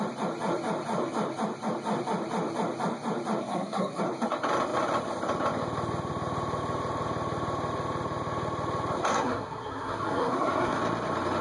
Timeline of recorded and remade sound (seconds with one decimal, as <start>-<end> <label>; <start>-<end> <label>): 0.0-3.4 recorded; 3.4-4.0 remade; 4.0-9.1 recorded; 9.1-10.8 remade; 10.8-11.4 recorded